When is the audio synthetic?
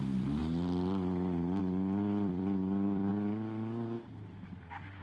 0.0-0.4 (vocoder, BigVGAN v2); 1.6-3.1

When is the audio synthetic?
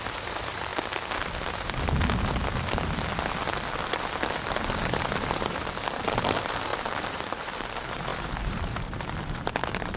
0.0-0.7 (vocoder, BigVGAN v2); 5.3-10.0